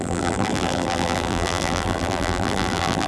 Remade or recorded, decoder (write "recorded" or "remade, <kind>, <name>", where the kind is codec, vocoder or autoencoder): remade, vocoder, BigVGAN v2